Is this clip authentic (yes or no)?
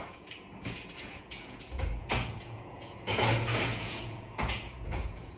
no